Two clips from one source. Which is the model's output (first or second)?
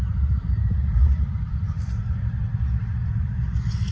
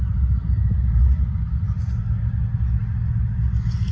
first